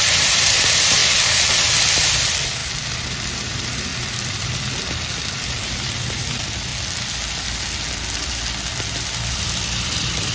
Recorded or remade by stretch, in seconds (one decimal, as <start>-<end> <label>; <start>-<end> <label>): 0.0-1.0 remade; 1.0-1.6 recorded; 1.6-6.7 remade; 6.7-9.3 recorded; 9.3-10.3 remade